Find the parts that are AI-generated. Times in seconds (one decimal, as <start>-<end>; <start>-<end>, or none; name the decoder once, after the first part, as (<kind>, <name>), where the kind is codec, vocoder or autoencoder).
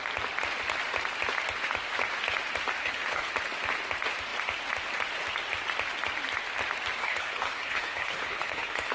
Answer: 2.8-3.3 (codec, HILCodec); 7.0-8.9